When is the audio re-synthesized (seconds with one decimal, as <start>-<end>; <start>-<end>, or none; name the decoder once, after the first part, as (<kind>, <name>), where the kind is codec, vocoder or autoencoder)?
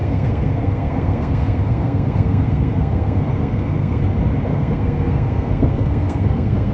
0.0-4.0 (codec, SNAC); 4.5-6.7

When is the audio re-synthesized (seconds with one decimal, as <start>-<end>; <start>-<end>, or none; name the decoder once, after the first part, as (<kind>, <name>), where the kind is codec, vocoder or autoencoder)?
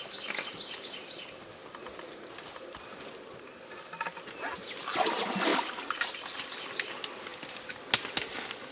5.5-6.2 (vocoder, BigVGAN v2)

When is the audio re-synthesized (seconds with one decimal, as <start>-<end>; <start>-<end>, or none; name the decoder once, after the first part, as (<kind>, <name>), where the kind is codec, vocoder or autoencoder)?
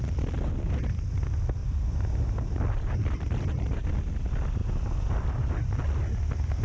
1.6-3.9 (vocoder, BigVGAN v2)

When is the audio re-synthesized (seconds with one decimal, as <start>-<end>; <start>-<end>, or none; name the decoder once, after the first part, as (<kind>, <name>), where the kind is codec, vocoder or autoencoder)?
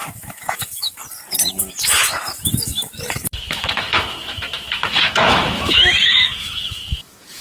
0.0-1.0 (autoencoder, DAC-VAE); 1.6-7.4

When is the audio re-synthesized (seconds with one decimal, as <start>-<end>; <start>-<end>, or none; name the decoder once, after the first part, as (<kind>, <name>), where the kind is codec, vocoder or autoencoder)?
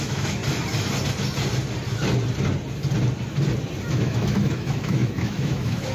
0.0-0.4 (autoencoder, DAC-VAE); 3.9-5.9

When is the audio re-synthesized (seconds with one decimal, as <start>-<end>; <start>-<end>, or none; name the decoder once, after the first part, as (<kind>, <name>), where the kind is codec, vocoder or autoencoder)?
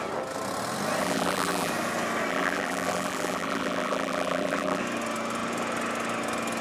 1.0-1.7 (vocoder, BigVGAN v2); 2.3-4.8